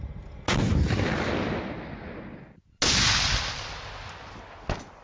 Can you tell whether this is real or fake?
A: real